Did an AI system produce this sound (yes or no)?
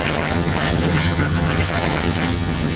yes